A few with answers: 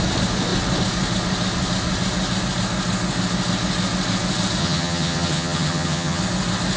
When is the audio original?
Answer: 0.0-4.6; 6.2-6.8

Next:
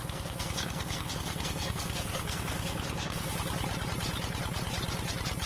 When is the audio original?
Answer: 3.3-5.5

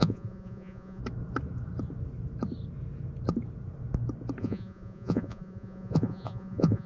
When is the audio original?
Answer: 1.0-4.4

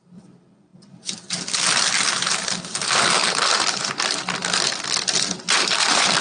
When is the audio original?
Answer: 0.0-6.2

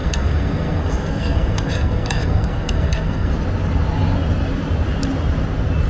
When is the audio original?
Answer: 3.3-5.9

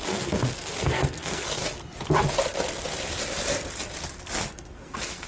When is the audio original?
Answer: 1.6-4.5